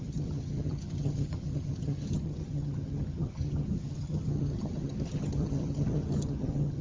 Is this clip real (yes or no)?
no